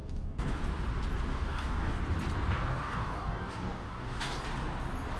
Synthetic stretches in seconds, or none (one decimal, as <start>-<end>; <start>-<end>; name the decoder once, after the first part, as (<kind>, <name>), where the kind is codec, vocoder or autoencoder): 0.0-0.6 (codec, DAC); 1.3-2.0; 2.7-4.4